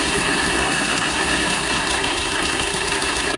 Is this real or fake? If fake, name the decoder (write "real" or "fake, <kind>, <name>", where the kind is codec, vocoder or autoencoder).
fake, codec, SNAC